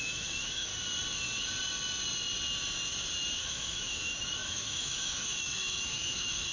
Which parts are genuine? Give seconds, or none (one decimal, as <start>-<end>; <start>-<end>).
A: 0.7-3.4